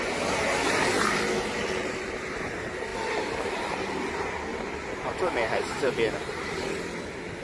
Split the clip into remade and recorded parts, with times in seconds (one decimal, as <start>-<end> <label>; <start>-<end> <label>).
0.0-4.5 recorded; 4.5-5.9 remade; 5.9-7.4 recorded